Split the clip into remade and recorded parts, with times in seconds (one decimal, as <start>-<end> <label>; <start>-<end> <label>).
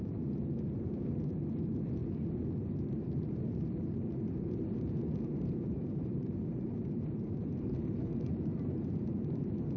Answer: 0.0-2.0 remade; 2.0-2.7 recorded; 2.7-9.8 remade